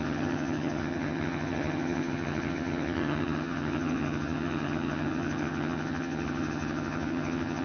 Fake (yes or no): yes